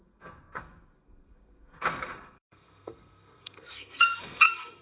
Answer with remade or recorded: remade